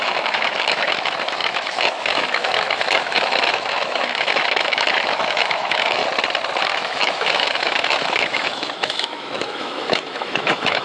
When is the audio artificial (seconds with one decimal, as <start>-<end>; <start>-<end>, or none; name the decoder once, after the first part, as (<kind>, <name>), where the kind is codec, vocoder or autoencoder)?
0.0-6.0 (autoencoder, DAC-VAE); 6.6-10.8